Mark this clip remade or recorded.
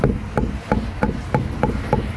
recorded